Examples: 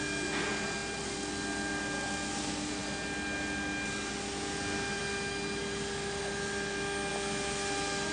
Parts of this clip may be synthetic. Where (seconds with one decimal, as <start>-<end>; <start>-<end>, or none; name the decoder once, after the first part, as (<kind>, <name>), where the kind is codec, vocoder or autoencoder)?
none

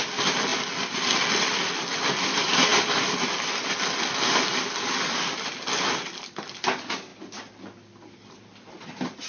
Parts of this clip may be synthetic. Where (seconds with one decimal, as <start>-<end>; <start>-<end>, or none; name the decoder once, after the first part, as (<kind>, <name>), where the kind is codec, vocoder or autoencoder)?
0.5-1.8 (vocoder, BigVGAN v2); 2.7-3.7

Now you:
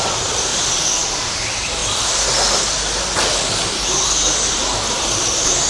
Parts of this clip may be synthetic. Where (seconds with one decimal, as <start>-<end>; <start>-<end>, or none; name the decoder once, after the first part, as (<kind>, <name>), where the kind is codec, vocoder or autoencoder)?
0.0-0.5 (vocoder, BigVGAN v2); 1.0-1.8; 4.9-5.7

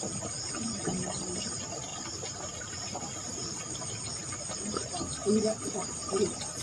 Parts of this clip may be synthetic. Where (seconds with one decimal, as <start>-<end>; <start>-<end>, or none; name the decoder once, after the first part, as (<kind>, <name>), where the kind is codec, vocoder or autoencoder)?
1.9-4.1 (vocoder, BigVGAN v2); 5.2-6.6

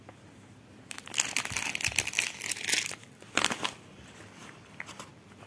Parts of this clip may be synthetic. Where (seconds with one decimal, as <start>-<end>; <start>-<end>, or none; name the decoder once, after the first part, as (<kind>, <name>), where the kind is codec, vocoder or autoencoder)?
4.4-5.1 (vocoder, BigVGAN v2)

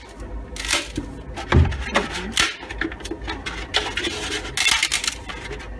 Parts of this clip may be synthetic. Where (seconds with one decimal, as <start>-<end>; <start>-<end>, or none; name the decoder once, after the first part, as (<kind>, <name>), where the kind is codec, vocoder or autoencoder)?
none